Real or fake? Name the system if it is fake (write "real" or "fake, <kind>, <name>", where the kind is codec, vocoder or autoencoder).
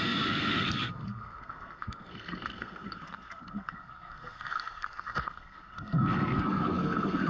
fake, codec, SNAC